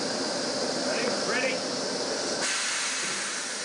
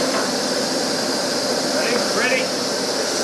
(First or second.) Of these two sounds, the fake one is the first